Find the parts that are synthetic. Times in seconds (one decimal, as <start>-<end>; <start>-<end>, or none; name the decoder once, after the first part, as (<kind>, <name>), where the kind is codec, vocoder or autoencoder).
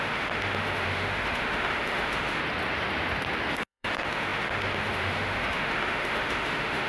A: 0.0-2.4 (autoencoder, DAC-VAE); 3.5-6.9